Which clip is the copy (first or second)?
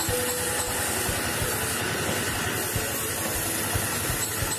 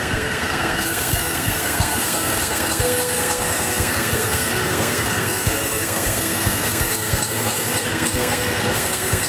second